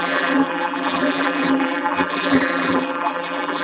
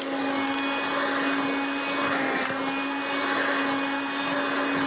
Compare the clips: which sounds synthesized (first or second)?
first